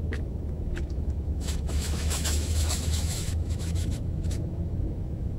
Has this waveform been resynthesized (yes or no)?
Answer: yes